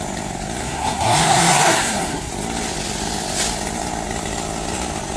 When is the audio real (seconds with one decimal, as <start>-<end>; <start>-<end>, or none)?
0.0-0.6; 2.3-5.2